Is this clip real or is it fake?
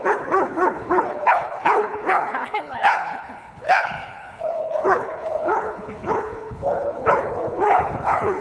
fake